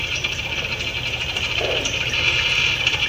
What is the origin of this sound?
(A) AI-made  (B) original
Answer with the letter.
A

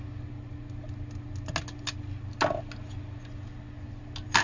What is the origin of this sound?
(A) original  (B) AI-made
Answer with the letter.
A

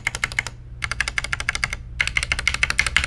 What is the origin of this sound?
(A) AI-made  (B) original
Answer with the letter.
B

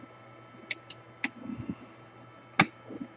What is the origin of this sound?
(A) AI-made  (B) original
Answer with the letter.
B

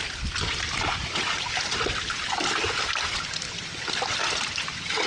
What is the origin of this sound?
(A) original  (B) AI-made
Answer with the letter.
A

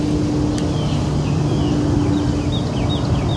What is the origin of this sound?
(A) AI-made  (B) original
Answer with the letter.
B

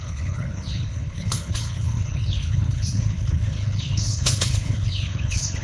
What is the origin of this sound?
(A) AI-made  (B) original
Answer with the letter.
A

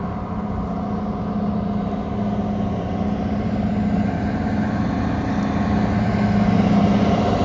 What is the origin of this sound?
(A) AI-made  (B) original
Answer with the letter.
B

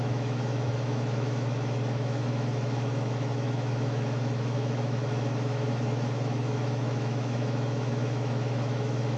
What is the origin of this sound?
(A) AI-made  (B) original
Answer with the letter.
A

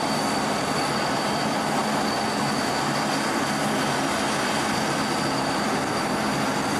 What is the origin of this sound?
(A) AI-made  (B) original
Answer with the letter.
B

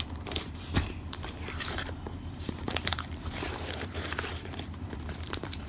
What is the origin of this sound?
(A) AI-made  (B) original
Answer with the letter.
A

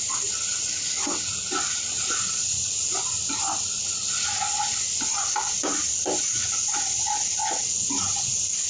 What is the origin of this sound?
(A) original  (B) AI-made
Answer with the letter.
A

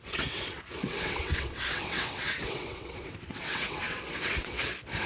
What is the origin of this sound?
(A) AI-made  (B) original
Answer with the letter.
A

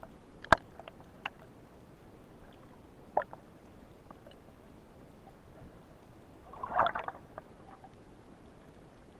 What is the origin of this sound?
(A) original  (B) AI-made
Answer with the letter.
A